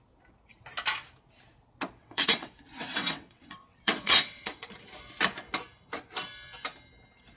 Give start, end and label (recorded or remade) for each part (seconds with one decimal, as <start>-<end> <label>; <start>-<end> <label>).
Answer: 0.0-2.0 recorded; 2.0-4.7 remade; 4.7-7.4 recorded